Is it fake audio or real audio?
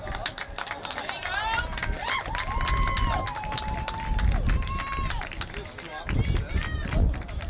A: real